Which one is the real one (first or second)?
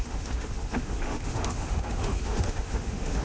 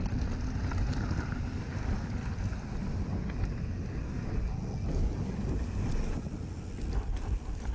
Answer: second